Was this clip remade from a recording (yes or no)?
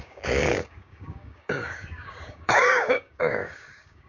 yes